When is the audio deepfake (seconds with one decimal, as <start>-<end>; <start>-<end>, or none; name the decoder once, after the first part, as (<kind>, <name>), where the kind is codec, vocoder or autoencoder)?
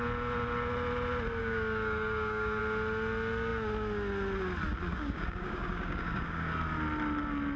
1.4-2.6 (codec, DAC); 4.9-6.5